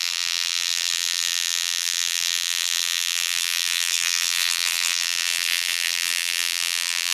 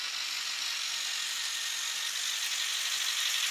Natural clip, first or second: second